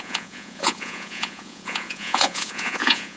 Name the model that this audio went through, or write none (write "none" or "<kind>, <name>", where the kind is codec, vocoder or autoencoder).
vocoder, Vocos